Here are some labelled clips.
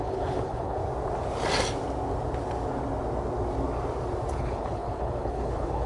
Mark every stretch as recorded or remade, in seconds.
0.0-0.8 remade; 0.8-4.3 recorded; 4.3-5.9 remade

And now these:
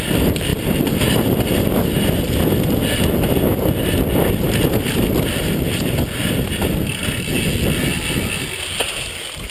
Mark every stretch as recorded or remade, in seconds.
0.0-0.5 recorded; 0.5-1.1 remade; 1.1-3.5 recorded; 3.5-4.2 remade; 4.2-7.0 recorded; 7.0-8.4 remade; 8.4-9.5 recorded

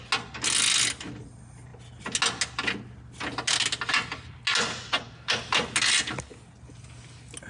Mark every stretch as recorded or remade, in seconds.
0.0-7.5 recorded

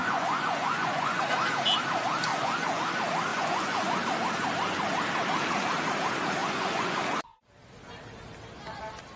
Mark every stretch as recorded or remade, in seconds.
0.0-1.2 remade; 1.2-2.3 recorded; 2.3-2.8 remade; 2.8-3.3 recorded; 3.3-4.0 remade; 4.0-6.4 recorded; 6.4-7.0 remade; 7.0-9.2 recorded

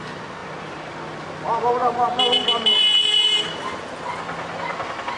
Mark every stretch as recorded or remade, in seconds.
0.0-5.2 recorded

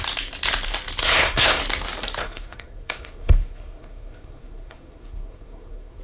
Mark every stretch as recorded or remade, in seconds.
0.0-1.0 recorded; 1.0-1.6 remade; 1.6-2.2 recorded; 2.2-6.0 remade

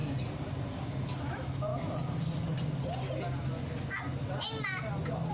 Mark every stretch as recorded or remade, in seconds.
0.0-1.2 recorded; 1.2-1.7 remade; 1.7-5.3 recorded

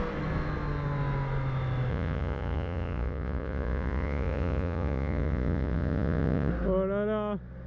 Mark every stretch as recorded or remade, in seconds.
0.0-1.9 recorded; 1.9-6.5 remade; 6.5-7.7 recorded